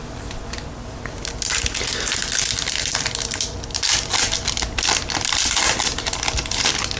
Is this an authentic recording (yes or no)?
yes